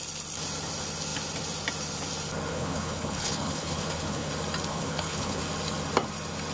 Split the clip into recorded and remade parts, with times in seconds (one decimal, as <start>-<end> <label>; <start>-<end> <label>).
0.0-2.5 recorded; 2.5-4.3 remade; 4.3-4.7 recorded; 4.7-5.4 remade; 5.4-6.5 recorded

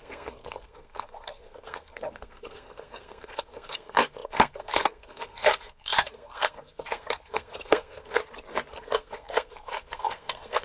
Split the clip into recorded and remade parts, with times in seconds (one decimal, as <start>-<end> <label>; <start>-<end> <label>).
0.0-8.2 remade; 8.2-8.7 recorded; 8.7-10.6 remade

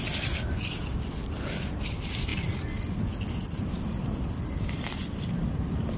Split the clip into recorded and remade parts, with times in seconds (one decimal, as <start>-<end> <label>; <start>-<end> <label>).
0.0-6.0 recorded

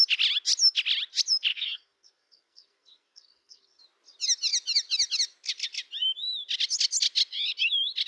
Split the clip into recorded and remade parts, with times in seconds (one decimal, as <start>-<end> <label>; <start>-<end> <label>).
0.0-1.5 recorded; 1.5-3.8 remade; 3.8-8.1 recorded

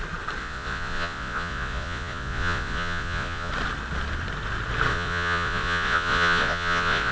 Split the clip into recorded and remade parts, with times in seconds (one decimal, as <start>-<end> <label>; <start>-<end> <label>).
0.0-0.4 recorded; 0.4-3.5 remade; 3.5-4.9 recorded; 4.9-7.1 remade

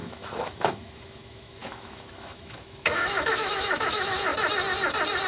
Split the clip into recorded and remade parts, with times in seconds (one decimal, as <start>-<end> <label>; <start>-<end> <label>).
0.0-4.3 remade; 4.3-5.3 recorded

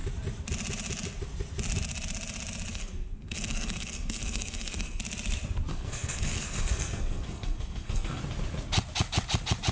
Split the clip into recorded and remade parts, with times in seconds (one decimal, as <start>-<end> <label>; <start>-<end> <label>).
0.0-2.7 recorded; 2.7-5.0 remade; 5.0-5.7 recorded; 5.7-8.2 remade; 8.2-9.7 recorded